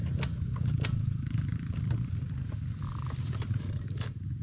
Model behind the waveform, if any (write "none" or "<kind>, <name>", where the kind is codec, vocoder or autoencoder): none